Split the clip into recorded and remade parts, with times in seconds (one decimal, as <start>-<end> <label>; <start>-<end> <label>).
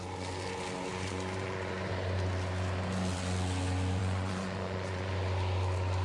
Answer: 0.0-0.9 recorded; 0.9-1.7 remade; 1.7-4.0 recorded; 4.0-5.1 remade; 5.1-6.0 recorded